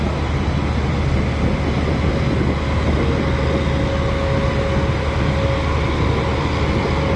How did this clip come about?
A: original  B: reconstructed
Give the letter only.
A